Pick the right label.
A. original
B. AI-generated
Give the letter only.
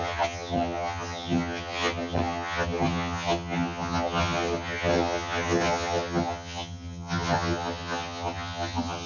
B